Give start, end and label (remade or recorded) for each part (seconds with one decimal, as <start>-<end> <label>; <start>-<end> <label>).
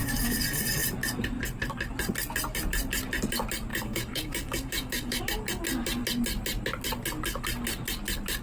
0.0-3.7 recorded; 3.7-5.2 remade; 5.2-8.4 recorded